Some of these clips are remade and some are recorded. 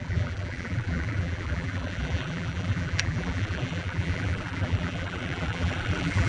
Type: remade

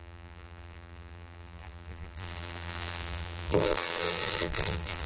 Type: remade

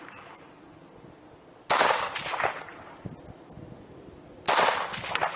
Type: recorded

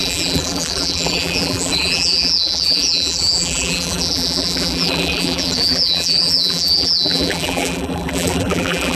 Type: remade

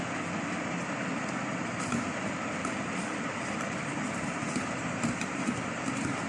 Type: remade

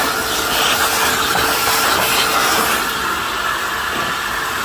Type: recorded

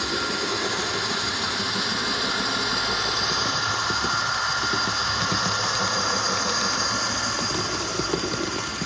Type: recorded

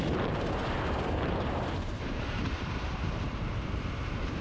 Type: remade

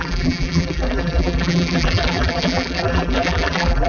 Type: remade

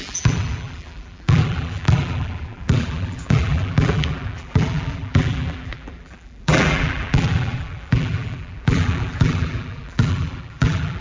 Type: remade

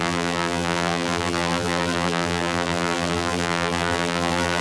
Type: remade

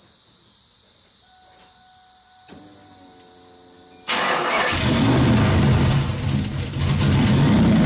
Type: recorded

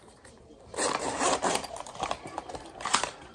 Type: remade